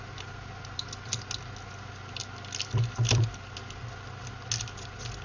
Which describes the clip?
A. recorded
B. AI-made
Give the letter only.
A